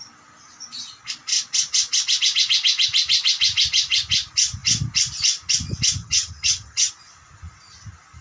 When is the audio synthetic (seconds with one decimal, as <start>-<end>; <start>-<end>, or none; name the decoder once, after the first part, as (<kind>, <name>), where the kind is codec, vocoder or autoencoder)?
6.0-6.9 (vocoder, HiFi-GAN)